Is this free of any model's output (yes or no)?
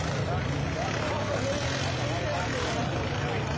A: yes